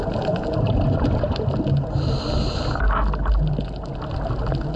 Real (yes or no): yes